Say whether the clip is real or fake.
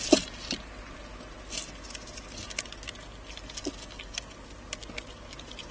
real